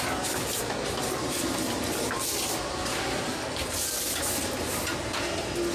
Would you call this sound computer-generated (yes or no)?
no